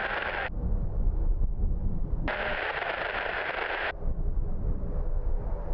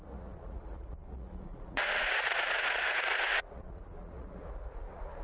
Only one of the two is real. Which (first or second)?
first